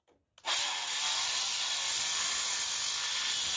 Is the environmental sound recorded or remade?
recorded